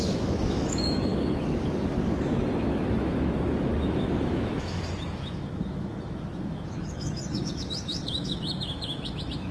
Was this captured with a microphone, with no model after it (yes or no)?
no